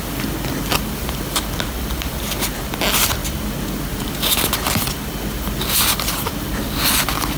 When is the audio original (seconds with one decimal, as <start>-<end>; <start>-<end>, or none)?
0.0-7.4